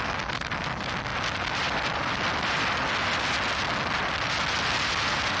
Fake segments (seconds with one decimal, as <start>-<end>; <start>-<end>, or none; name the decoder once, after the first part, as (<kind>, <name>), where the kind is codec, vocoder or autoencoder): none